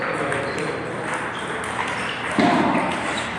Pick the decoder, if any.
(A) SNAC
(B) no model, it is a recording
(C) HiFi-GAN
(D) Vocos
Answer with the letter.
B